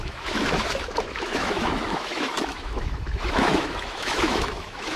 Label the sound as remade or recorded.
remade